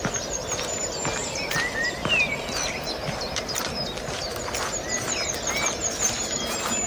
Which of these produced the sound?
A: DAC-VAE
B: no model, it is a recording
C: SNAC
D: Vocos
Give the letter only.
B